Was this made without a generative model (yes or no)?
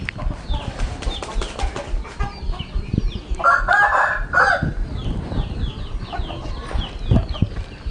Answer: yes